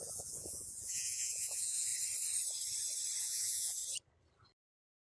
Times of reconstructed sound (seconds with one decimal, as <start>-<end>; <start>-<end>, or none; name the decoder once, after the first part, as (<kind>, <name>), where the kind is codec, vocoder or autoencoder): 0.0-1.9 (vocoder, Vocos); 3.2-3.8